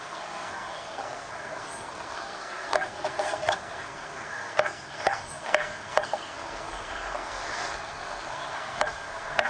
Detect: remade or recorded remade